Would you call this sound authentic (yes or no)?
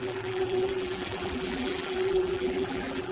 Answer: no